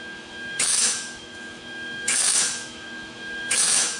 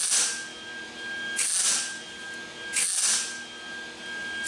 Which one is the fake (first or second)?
first